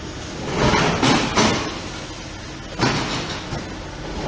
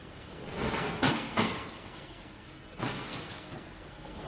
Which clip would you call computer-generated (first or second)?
second